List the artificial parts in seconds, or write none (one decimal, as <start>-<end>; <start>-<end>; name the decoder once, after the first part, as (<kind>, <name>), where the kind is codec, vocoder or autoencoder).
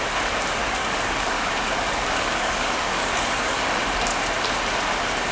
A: 0.6-3.8 (codec, DAC)